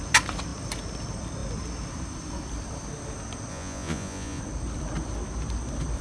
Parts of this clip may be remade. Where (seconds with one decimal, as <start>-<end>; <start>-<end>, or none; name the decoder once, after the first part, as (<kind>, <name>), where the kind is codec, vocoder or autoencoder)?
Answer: 3.5-4.4 (vocoder, Vocos)